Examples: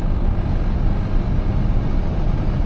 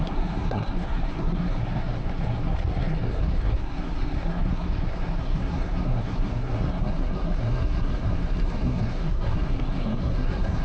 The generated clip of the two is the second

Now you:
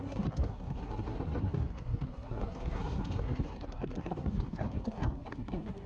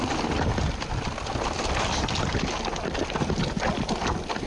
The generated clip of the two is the first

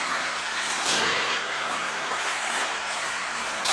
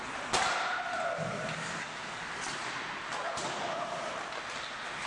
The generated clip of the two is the first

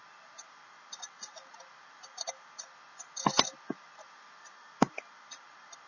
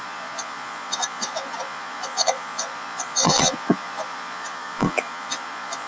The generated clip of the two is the second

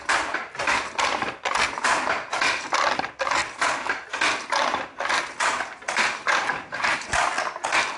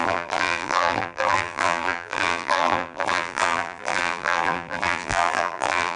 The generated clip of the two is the second